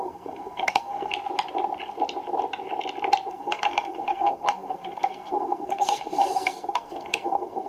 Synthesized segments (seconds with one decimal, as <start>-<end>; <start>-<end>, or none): 0.0-1.1; 3.3-7.7